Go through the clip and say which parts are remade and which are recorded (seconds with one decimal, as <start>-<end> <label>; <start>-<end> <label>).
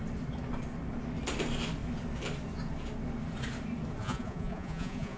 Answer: 0.0-4.0 recorded; 4.0-5.2 remade